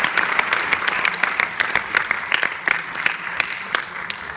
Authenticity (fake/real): real